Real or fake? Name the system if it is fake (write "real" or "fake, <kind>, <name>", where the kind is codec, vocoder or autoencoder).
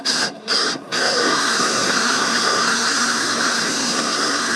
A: fake, codec, SNAC